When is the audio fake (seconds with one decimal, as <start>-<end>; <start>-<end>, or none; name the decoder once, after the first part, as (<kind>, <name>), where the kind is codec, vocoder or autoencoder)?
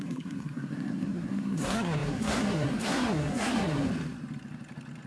0.0-3.9 (codec, SNAC)